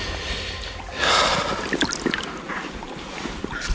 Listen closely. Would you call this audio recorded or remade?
recorded